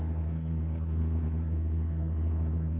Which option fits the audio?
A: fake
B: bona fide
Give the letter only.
A